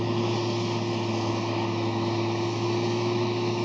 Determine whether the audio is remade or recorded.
remade